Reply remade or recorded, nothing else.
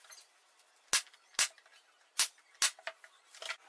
recorded